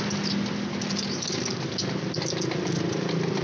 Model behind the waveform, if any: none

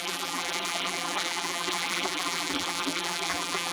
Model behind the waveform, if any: vocoder, BigVGAN v2